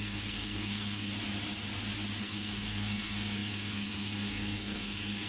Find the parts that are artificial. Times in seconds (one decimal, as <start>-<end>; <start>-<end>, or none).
0.0-1.1; 2.2-5.3